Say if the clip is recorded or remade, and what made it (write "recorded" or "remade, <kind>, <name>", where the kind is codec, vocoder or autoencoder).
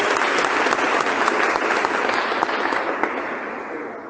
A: recorded